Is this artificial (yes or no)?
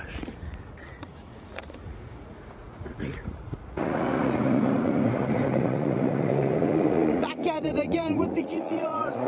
yes